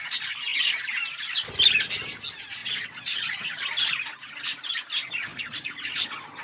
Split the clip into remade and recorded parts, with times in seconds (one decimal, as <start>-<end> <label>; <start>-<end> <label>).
0.0-2.6 recorded; 2.6-3.5 remade; 3.5-5.3 recorded; 5.3-6.4 remade